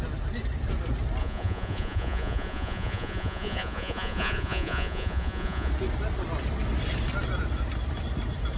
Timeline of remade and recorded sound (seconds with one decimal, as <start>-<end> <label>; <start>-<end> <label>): 0.0-1.2 recorded; 1.2-5.7 remade; 5.7-8.6 recorded